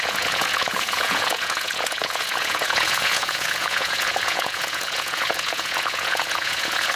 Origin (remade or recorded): remade